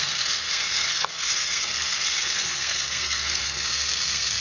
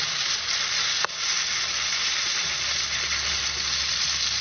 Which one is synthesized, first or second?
first